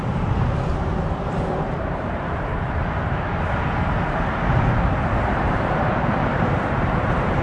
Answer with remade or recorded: remade